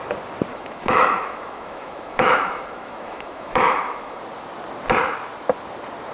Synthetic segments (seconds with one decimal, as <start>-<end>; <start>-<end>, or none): 0.5-4.2